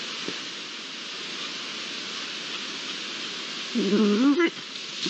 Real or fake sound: real